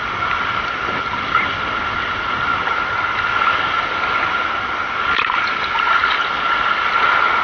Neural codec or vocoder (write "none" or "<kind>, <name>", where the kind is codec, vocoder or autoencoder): none